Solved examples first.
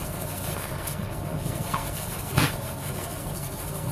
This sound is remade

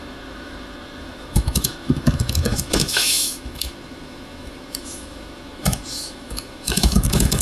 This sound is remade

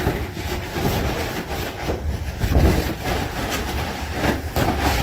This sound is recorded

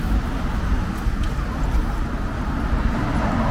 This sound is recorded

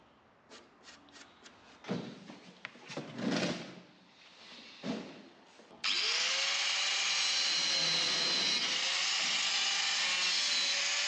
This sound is recorded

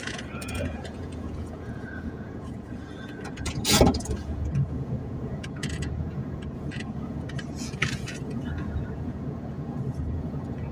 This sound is remade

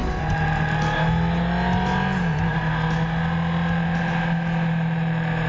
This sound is recorded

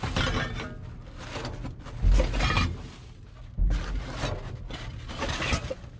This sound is recorded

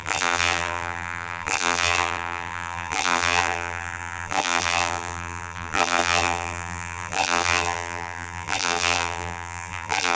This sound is remade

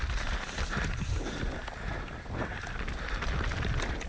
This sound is recorded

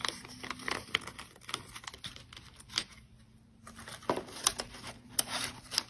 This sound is recorded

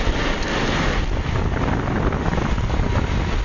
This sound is recorded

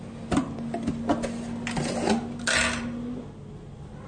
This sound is recorded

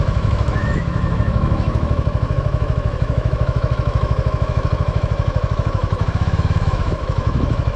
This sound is remade